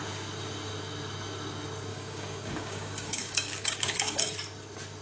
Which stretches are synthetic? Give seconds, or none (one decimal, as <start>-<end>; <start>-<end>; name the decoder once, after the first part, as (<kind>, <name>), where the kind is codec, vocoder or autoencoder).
1.9-4.4 (codec, DAC)